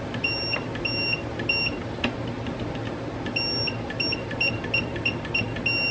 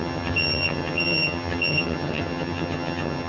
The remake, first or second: second